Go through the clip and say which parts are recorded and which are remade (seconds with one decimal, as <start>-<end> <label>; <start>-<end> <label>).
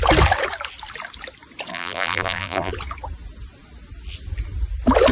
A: 0.0-1.7 recorded; 1.7-2.7 remade; 2.7-5.1 recorded